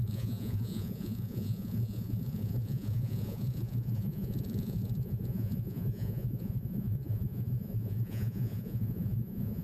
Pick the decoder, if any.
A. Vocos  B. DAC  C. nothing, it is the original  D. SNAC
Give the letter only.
A